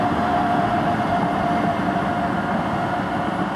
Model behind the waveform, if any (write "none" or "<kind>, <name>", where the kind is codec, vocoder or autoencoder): none